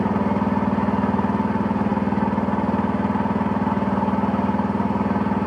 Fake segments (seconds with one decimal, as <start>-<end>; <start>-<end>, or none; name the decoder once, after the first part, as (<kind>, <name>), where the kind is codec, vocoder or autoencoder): none